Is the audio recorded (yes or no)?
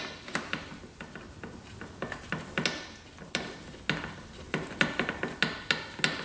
yes